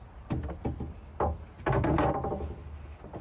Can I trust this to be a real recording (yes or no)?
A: yes